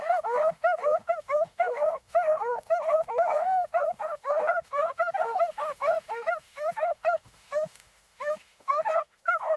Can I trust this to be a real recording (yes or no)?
no